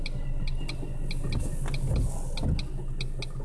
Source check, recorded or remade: recorded